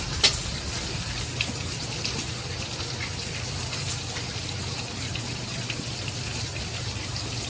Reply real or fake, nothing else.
real